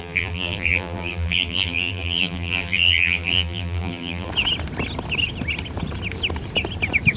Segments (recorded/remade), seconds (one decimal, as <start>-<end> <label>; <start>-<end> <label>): 0.0-4.3 remade; 4.3-7.2 recorded